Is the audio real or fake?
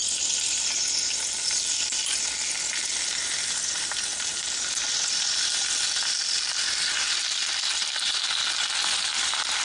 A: real